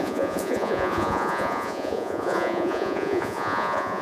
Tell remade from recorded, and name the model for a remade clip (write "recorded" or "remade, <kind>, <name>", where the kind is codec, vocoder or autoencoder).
remade, vocoder, Vocos